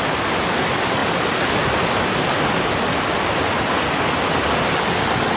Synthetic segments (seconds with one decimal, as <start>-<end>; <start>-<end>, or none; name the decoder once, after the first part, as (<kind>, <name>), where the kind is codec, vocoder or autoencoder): none